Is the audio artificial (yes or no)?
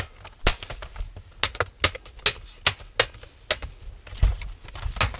no